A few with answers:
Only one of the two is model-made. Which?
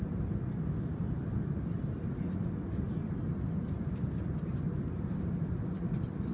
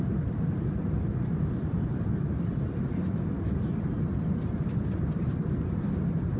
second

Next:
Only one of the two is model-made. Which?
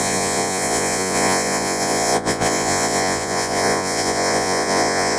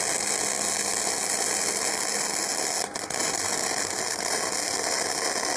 first